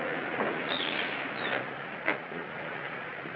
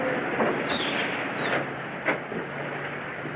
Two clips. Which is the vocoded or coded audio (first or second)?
first